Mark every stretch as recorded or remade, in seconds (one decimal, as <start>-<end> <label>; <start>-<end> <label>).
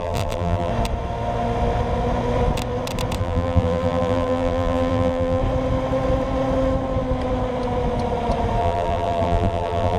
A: 0.0-0.7 remade; 0.7-3.2 recorded; 3.2-5.4 remade; 5.4-8.6 recorded; 8.6-10.0 remade